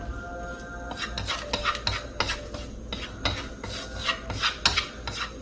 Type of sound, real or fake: real